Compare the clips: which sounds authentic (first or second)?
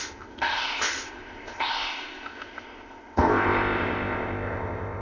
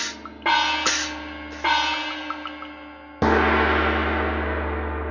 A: second